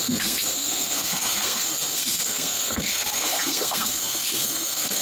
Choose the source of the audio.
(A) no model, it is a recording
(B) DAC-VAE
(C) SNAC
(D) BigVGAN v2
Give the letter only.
C